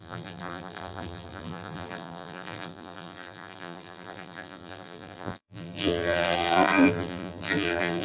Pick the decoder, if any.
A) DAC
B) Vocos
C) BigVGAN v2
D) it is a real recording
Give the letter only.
C